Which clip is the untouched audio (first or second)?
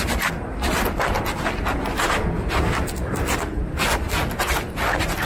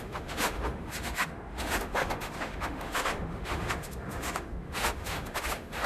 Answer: first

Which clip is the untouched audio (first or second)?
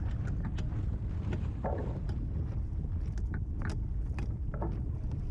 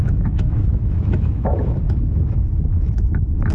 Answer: first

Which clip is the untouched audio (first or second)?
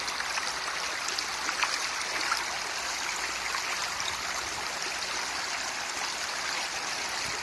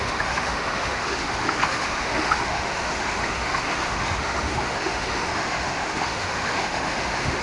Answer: first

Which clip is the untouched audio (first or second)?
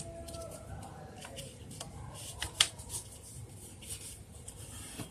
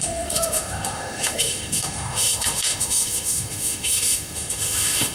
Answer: first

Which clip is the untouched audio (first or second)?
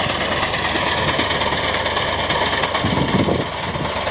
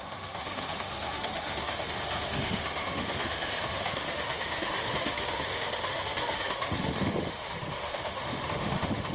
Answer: first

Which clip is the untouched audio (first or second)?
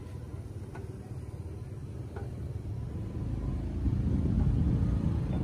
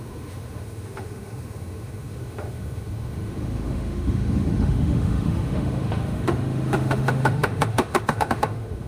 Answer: first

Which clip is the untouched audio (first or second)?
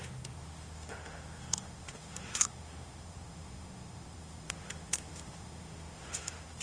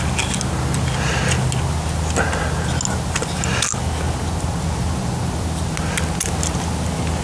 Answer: second